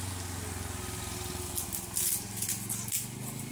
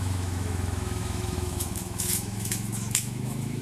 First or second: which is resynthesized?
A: second